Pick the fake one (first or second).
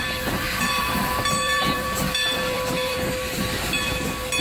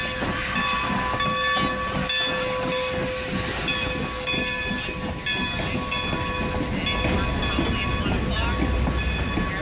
first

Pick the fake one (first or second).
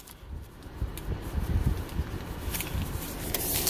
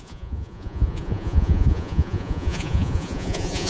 second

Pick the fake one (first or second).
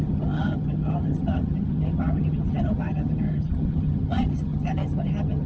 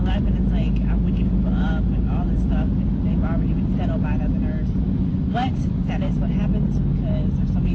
first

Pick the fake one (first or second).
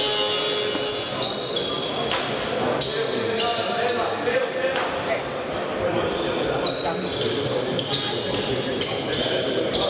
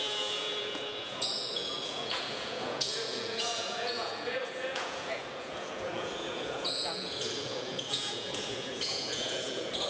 second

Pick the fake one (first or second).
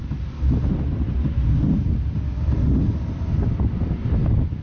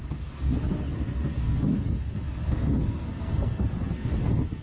second